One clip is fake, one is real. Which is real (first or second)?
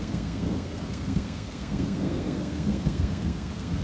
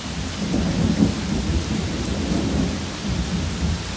second